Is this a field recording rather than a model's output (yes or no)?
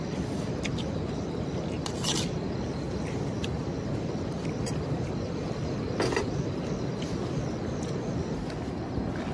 yes